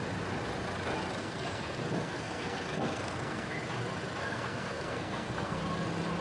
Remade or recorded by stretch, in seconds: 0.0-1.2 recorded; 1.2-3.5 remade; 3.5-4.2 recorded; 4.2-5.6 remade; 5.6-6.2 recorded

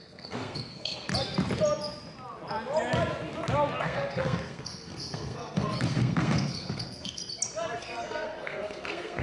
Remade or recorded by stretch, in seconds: 0.0-1.1 remade; 1.1-3.8 recorded; 3.8-7.2 remade; 7.2-7.8 recorded; 7.8-9.2 remade